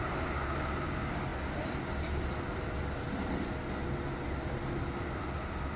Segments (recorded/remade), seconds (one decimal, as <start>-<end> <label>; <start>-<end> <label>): 0.0-5.8 recorded

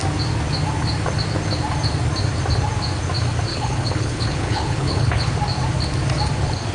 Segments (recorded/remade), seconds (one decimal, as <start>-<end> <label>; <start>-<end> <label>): 0.0-3.5 recorded; 3.5-5.3 remade; 5.3-6.7 recorded